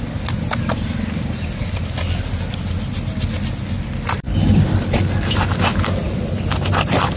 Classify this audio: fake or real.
real